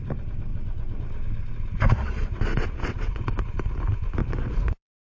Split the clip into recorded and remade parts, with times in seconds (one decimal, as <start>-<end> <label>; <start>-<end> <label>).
0.0-2.8 recorded; 2.8-3.4 remade; 3.4-4.2 recorded; 4.2-5.0 remade